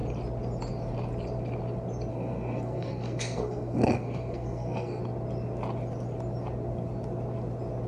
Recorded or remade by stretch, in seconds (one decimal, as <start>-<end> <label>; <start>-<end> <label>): 0.0-2.1 recorded; 2.1-5.0 remade; 5.0-7.9 recorded

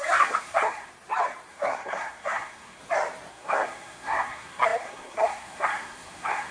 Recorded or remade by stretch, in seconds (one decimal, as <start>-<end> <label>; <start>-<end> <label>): 0.0-0.9 remade; 0.9-1.5 recorded; 1.5-2.8 remade; 2.8-3.3 recorded; 3.3-6.5 remade

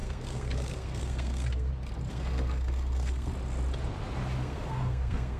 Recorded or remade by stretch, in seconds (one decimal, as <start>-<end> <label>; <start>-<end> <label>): 0.0-1.7 remade; 1.7-2.1 recorded; 2.1-3.3 remade; 3.3-4.4 recorded; 4.4-5.4 remade

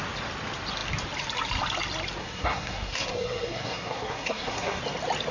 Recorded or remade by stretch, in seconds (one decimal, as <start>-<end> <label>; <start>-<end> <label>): 0.0-2.2 recorded; 2.2-4.8 remade; 4.8-5.3 recorded

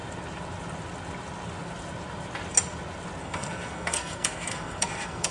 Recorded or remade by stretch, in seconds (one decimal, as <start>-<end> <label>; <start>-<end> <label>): 0.0-3.2 recorded; 3.2-5.3 remade

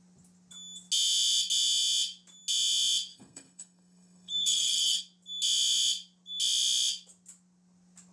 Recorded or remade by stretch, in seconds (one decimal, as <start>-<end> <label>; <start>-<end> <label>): 0.0-3.1 recorded; 3.1-5.0 remade; 5.0-8.1 recorded

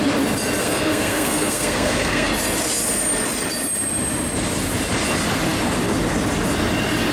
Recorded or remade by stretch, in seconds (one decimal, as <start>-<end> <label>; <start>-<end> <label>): 0.0-0.6 recorded; 0.6-2.3 remade; 2.3-7.1 recorded

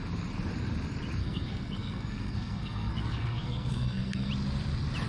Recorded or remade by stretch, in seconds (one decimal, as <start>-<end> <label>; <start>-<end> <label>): 0.0-1.2 recorded; 1.2-4.3 remade; 4.3-5.1 recorded